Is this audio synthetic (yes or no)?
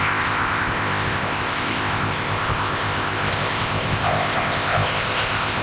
yes